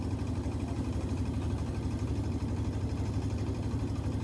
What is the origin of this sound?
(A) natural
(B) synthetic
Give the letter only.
A